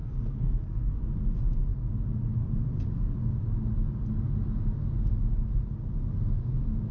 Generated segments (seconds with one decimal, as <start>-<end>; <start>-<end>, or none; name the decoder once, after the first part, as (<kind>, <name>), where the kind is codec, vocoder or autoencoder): 0.0-1.0 (codec, SNAC)